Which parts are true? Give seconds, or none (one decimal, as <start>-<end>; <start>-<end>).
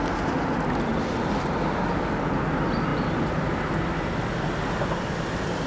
0.0-5.7